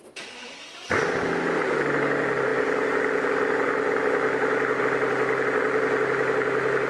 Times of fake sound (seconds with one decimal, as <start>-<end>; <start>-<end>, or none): none